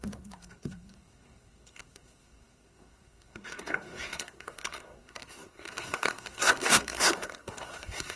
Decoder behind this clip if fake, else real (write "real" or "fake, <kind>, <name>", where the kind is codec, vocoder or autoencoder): fake, codec, SNAC